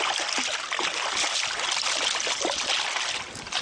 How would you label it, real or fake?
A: real